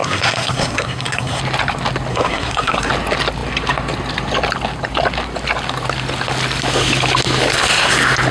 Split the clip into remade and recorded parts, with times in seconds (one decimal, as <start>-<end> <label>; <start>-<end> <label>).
0.0-1.4 remade; 1.4-2.1 recorded; 2.1-2.9 remade; 2.9-8.3 recorded